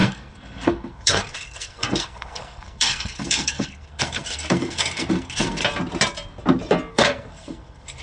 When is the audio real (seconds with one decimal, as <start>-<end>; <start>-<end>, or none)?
5.6-6.9